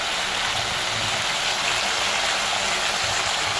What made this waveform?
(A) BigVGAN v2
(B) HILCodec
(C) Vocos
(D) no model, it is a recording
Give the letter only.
D